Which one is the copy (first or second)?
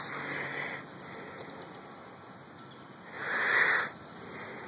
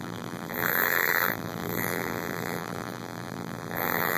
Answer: second